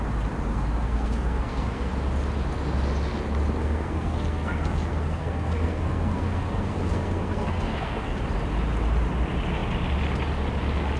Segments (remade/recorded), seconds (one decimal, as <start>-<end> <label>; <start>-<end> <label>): 0.0-0.5 recorded; 0.5-1.9 remade; 1.9-3.6 recorded; 3.6-8.2 remade; 8.2-11.0 recorded